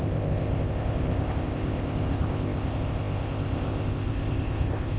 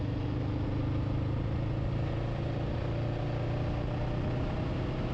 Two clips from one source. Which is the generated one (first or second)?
first